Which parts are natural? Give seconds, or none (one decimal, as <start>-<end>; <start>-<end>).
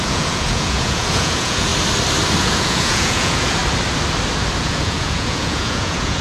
1.7-2.4; 3.6-4.6